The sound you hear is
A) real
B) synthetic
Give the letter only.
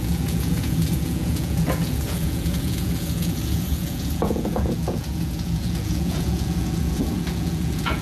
B